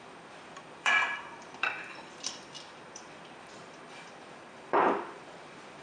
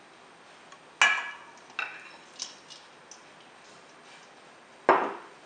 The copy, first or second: first